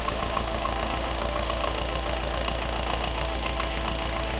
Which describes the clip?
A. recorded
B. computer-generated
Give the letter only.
B